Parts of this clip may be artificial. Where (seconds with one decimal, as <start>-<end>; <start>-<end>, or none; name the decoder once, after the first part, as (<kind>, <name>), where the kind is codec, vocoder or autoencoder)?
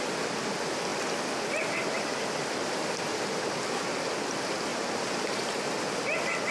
4.7-5.6 (vocoder, BigVGAN v2)